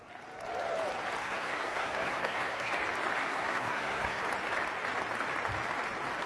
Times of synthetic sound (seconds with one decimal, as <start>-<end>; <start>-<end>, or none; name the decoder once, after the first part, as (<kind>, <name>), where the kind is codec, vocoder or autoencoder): 1.2-2.7 (codec, SNAC); 3.2-4.2